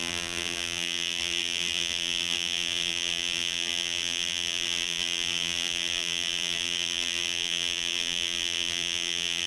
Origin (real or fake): fake